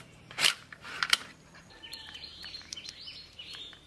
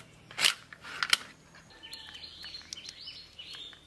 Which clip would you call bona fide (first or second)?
second